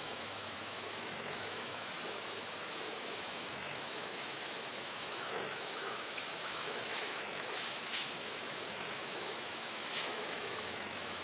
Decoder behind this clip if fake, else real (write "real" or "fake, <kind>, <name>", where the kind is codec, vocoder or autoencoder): fake, autoencoder, DAC-VAE